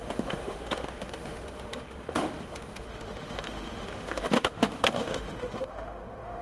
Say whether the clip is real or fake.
fake